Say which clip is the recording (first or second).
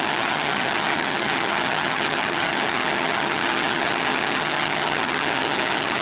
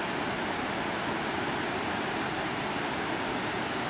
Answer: second